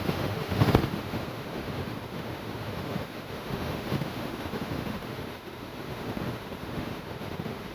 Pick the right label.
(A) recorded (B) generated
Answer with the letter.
B